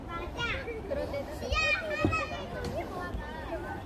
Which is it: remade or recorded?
recorded